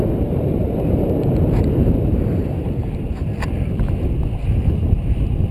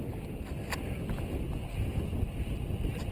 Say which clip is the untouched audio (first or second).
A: second